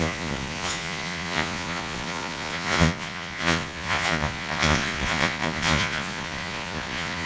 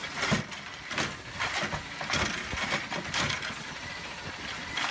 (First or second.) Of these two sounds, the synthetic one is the first